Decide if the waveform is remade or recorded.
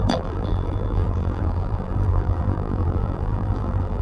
remade